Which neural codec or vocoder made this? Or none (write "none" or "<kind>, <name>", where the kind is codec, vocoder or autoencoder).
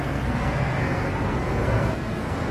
codec, SNAC